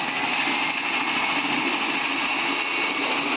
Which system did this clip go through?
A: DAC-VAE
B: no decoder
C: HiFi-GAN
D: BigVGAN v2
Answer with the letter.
B